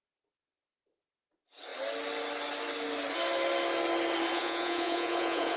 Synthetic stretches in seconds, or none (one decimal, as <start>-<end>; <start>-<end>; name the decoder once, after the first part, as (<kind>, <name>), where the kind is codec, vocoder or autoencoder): 4.3-5.6 (vocoder, Vocos)